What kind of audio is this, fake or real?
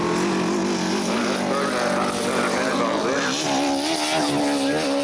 real